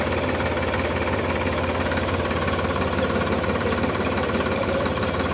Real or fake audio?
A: fake